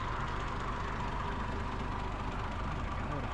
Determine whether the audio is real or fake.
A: real